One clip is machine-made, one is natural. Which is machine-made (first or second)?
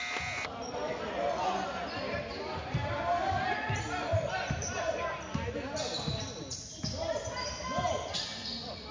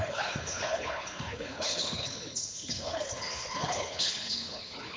second